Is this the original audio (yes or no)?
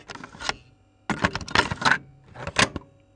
yes